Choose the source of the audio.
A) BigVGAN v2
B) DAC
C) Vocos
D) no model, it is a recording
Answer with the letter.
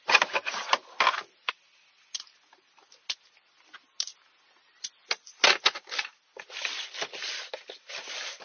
D